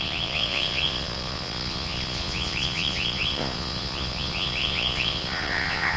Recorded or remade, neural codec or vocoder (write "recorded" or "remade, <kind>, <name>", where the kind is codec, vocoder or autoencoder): remade, vocoder, Vocos